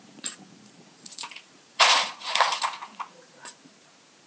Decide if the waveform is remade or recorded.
remade